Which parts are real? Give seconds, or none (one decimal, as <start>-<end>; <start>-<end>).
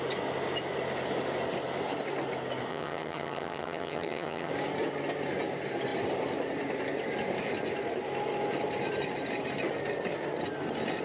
0.0-2.7; 4.5-11.0